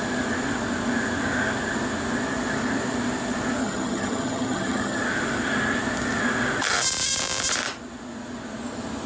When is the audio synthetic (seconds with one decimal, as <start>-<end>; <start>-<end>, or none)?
3.6-5.0